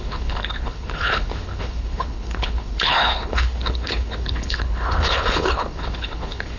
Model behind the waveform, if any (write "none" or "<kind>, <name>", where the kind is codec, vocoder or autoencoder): codec, HILCodec